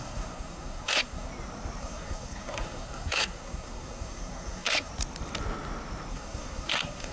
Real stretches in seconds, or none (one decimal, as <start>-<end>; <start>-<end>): 1.3-1.8; 4.9-6.1